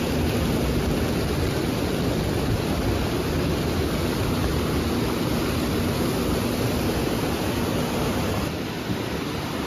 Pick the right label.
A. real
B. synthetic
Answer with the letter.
A